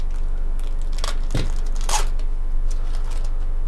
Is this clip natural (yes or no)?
yes